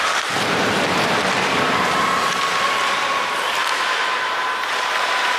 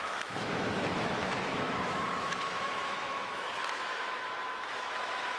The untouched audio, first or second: first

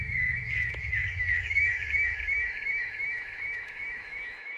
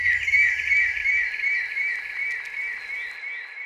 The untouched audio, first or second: second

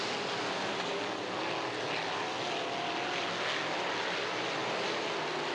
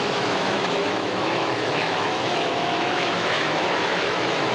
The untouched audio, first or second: first